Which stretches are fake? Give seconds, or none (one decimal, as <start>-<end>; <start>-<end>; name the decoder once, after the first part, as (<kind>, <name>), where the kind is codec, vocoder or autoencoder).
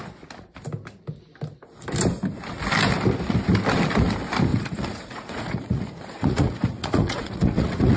4.5-8.0 (vocoder, Vocos)